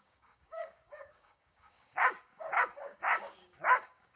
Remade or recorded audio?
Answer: remade